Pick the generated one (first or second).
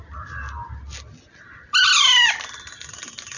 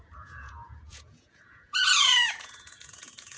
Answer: second